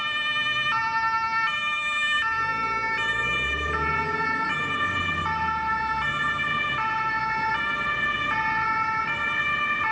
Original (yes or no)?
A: yes